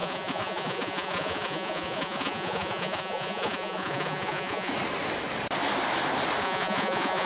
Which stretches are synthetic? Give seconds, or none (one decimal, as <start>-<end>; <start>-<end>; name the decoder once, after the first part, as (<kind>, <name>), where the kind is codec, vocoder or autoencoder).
0.0-4.7 (vocoder, Vocos); 6.4-7.2